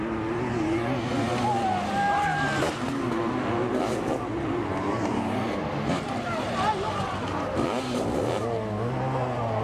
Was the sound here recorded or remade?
recorded